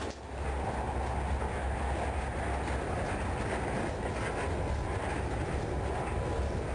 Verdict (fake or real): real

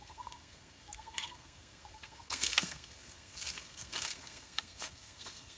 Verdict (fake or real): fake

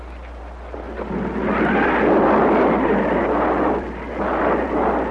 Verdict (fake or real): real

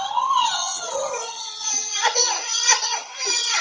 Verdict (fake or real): fake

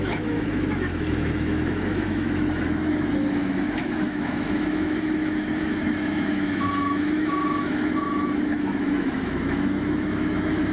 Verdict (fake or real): fake